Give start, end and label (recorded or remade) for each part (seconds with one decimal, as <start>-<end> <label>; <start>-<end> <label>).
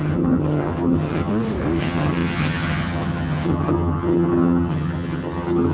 0.0-1.3 remade; 1.3-1.8 recorded; 1.8-5.7 remade